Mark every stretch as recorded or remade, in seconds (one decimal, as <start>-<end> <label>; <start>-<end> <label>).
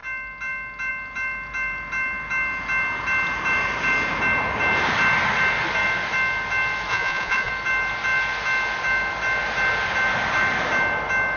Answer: 0.0-6.9 recorded; 6.9-7.5 remade; 7.5-11.4 recorded